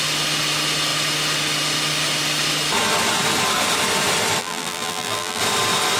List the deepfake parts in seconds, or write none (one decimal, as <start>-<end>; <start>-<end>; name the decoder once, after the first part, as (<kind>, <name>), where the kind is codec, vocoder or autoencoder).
4.4-5.4 (vocoder, BigVGAN v2)

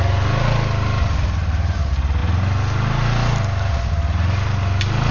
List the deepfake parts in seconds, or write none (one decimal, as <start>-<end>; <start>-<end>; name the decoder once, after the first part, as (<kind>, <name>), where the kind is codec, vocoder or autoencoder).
none

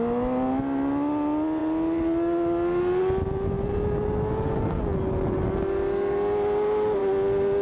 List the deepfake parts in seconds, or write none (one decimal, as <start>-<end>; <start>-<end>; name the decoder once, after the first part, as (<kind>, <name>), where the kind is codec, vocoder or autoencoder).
none

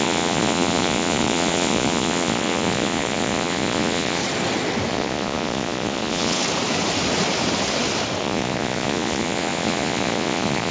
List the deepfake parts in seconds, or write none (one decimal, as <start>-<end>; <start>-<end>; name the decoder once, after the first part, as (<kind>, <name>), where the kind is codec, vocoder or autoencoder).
0.0-4.2 (vocoder, Vocos); 4.9-6.4; 8.2-10.7

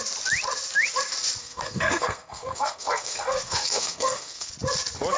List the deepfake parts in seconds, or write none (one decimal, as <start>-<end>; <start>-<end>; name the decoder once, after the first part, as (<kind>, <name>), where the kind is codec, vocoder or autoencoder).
1.4-4.5 (codec, SNAC)